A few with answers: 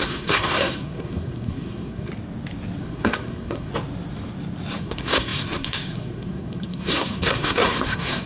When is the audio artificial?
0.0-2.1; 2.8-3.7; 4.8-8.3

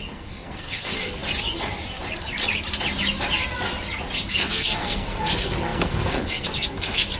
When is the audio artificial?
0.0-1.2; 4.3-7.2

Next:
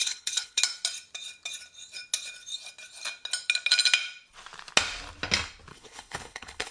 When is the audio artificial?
0.0-0.6; 5.7-6.7